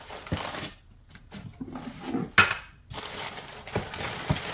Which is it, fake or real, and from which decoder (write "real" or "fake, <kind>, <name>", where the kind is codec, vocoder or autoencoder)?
real